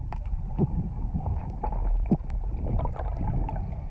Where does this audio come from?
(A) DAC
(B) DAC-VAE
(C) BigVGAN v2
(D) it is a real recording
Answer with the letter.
D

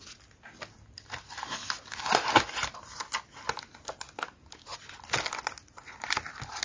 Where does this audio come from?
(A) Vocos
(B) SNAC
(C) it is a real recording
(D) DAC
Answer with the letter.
C